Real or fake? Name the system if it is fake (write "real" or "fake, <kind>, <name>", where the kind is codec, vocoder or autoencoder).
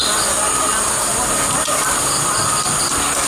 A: real